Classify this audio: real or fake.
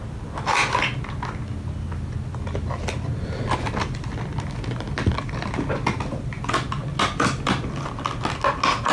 real